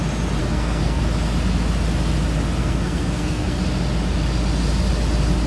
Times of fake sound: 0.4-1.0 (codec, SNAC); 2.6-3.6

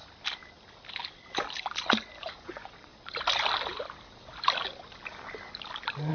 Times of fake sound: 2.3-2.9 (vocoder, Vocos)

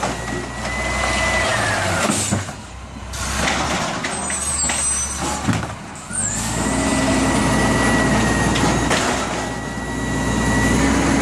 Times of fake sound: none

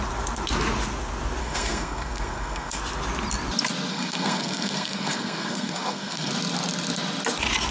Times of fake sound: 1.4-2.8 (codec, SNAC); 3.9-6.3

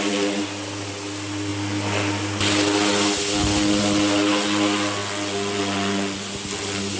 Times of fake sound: none

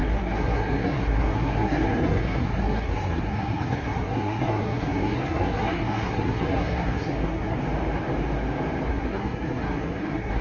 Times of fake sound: 0.0-7.6 (codec, SNAC); 8.9-10.4